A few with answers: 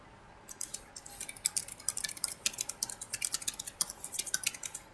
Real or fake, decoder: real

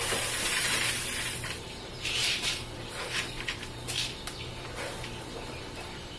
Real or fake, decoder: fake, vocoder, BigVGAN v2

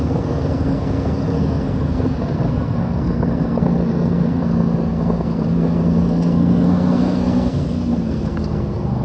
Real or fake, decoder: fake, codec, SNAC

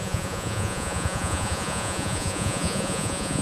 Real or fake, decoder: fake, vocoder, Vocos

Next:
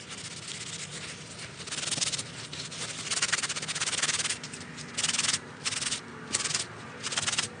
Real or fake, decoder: real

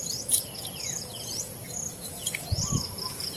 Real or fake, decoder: fake, vocoder, Vocos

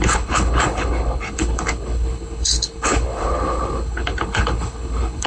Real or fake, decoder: fake, codec, HILCodec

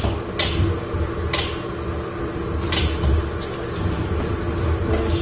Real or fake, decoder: real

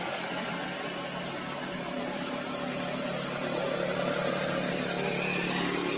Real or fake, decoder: real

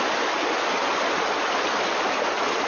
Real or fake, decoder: real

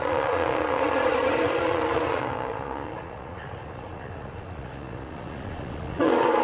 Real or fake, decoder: fake, vocoder, Vocos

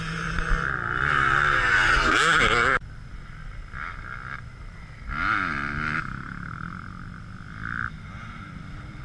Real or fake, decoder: real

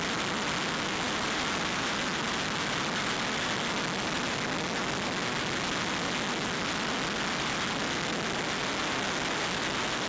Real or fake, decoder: real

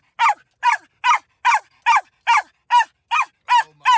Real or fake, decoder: real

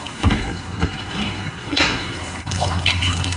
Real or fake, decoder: fake, codec, SNAC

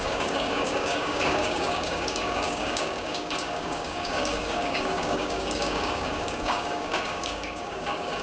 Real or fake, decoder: fake, codec, DAC